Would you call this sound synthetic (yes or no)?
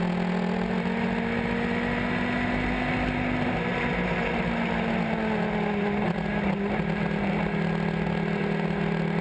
no